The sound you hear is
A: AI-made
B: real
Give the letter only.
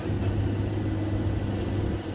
B